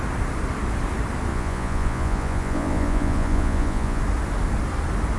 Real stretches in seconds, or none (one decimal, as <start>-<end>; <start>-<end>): 0.0-1.3; 4.0-5.2